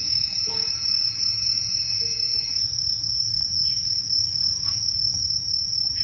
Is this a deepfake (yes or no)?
yes